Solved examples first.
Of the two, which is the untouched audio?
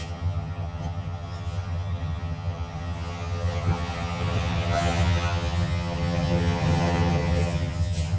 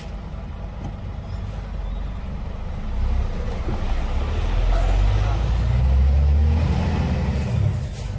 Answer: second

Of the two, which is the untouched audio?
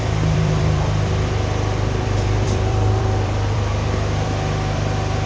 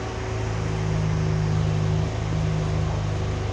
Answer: second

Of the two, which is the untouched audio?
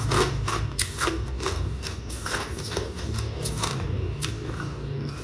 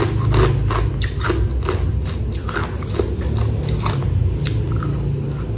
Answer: second